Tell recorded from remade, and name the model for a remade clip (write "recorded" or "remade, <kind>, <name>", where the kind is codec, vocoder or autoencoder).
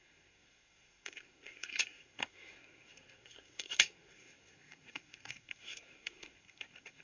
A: remade, codec, SNAC